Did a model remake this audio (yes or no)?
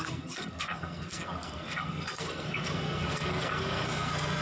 yes